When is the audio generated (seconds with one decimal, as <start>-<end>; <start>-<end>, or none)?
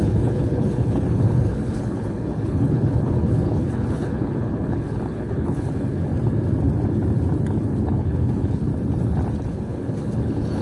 0.0-6.1; 7.4-8.7; 9.4-10.6